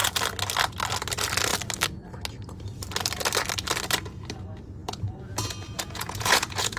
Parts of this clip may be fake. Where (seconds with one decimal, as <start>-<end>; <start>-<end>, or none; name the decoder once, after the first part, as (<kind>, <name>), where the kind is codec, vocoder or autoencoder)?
4.8-6.8 (vocoder, Vocos)